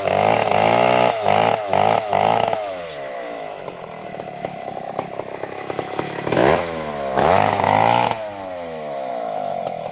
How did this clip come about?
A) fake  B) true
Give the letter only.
A